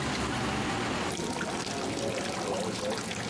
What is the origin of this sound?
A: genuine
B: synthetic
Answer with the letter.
A